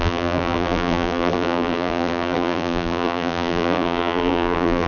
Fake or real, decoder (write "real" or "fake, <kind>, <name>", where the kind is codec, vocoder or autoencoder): fake, vocoder, BigVGAN v2